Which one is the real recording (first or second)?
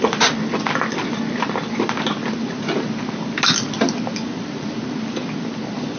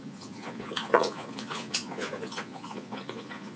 first